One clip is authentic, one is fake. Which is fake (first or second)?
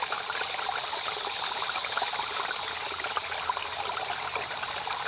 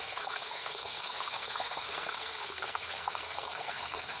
second